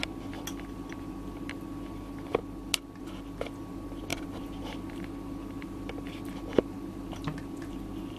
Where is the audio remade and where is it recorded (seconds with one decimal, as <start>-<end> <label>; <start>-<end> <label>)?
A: 0.0-8.2 recorded